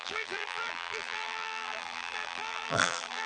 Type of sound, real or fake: fake